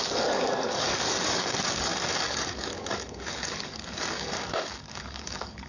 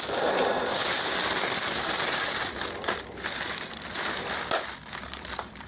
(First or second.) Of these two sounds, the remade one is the first